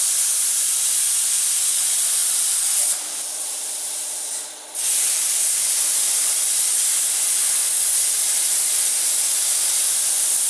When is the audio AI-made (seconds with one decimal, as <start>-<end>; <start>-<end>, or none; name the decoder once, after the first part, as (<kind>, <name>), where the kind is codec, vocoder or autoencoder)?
2.2-2.8 (vocoder, BigVGAN v2); 7.6-8.7